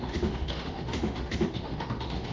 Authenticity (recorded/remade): remade